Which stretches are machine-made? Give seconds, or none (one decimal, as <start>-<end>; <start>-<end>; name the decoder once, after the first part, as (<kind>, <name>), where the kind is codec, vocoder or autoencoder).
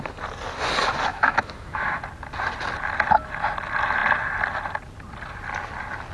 1.1-2.0 (autoencoder, DAC-VAE)